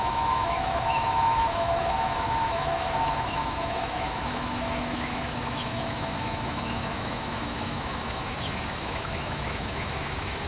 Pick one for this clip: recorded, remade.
remade